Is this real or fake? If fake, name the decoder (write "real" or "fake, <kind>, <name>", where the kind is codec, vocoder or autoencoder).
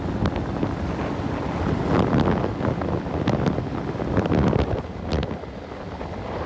real